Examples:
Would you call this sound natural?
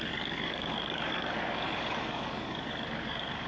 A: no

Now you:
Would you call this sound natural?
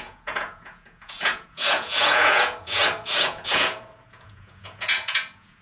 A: no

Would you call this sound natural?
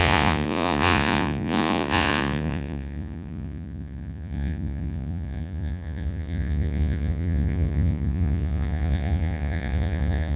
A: no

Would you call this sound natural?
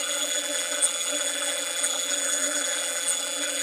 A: no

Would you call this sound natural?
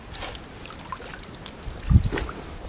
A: yes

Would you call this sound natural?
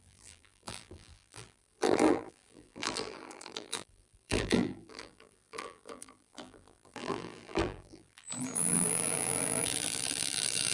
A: no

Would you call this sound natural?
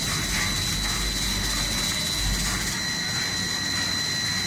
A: yes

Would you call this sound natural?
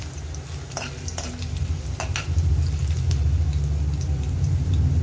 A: yes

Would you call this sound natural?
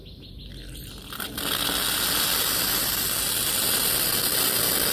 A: yes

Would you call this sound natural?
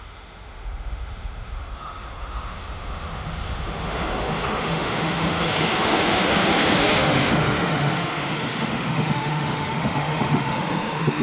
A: no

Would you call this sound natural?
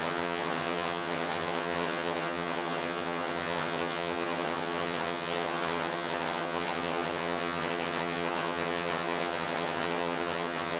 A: no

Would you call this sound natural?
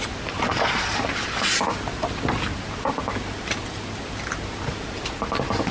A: yes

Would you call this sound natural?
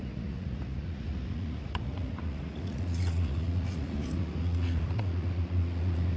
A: no